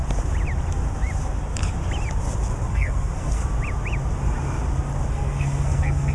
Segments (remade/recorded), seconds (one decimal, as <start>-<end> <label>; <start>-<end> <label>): 0.0-2.7 recorded; 2.7-3.4 remade; 3.4-5.1 recorded; 5.1-6.1 remade